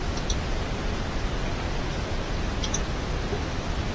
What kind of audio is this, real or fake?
real